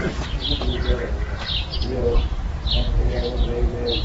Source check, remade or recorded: recorded